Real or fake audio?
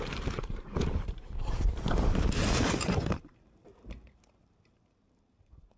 fake